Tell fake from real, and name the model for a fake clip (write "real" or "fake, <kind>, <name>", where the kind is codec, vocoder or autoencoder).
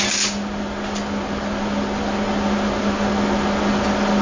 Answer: real